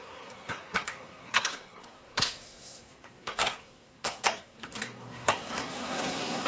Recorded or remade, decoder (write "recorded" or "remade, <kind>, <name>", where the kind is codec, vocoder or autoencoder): remade, codec, SNAC